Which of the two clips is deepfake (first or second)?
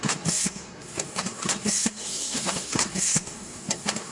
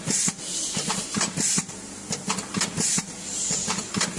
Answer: first